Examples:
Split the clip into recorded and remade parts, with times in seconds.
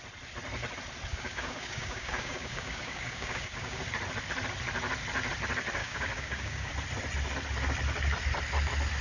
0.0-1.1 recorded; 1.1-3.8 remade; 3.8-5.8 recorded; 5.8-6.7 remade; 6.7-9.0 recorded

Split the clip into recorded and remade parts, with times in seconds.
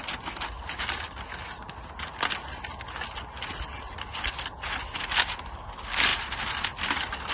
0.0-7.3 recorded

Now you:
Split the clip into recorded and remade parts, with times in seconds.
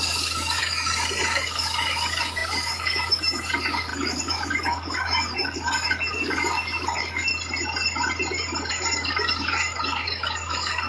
0.0-7.3 remade; 7.3-8.7 recorded; 8.7-10.9 remade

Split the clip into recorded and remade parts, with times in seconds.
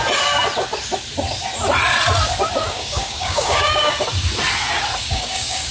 0.0-2.6 recorded; 2.6-3.9 remade; 3.9-5.0 recorded; 5.0-5.7 remade